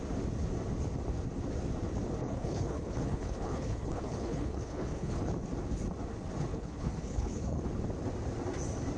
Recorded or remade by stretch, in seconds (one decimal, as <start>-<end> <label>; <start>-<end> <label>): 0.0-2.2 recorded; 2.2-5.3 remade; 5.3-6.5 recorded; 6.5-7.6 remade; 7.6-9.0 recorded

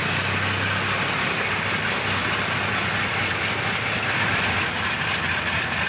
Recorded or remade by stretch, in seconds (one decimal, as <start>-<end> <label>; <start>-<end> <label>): 0.0-5.9 recorded

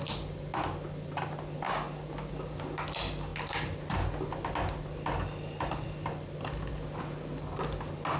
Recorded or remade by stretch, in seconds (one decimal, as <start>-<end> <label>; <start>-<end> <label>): 0.0-8.2 recorded

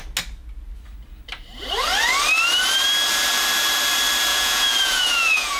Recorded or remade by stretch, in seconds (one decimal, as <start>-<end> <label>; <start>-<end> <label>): 0.0-4.3 recorded; 4.3-5.6 remade